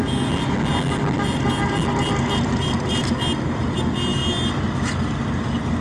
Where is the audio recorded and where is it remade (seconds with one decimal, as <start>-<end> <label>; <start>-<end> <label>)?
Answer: 0.0-5.8 recorded